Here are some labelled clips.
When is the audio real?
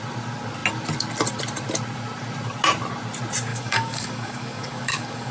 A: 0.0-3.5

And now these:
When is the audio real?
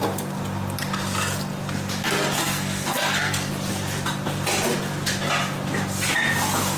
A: 0.0-2.4; 3.5-6.8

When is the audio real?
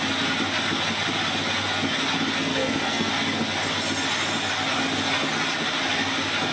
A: 0.0-2.5; 3.1-6.5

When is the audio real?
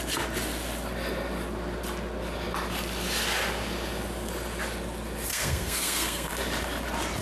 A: 0.0-5.3; 6.3-7.2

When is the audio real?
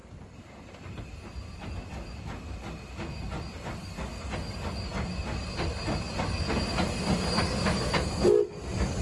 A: 1.7-9.0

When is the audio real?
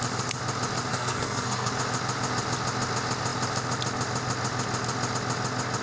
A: 0.0-0.9; 1.7-5.8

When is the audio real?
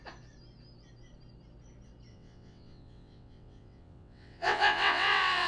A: 0.0-2.1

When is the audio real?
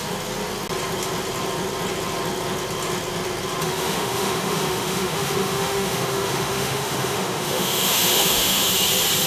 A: 0.0-3.6; 8.7-9.3